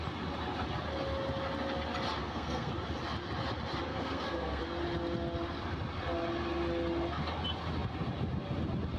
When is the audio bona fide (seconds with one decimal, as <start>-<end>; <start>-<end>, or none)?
0.0-2.2; 2.7-3.9; 4.6-9.0